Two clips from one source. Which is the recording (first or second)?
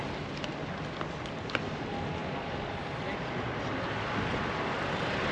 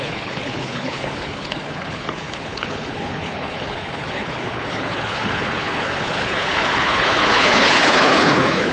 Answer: first